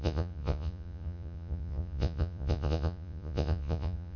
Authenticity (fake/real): fake